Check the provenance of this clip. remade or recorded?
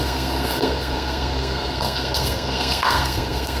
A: remade